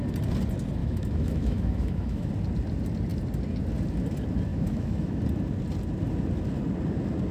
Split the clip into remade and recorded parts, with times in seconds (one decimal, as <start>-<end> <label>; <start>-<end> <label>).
0.0-0.8 recorded; 0.8-2.3 remade; 2.3-4.5 recorded; 4.5-5.2 remade; 5.2-7.3 recorded